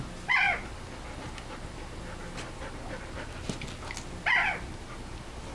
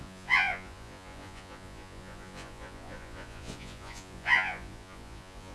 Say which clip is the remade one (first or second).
second